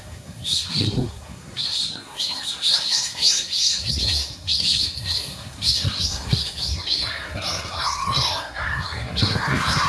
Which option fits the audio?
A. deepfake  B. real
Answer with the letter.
A